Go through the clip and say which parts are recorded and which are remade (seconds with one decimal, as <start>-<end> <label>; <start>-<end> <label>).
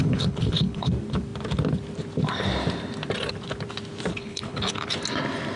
0.0-0.9 remade; 0.9-4.1 recorded; 4.1-4.9 remade; 4.9-5.6 recorded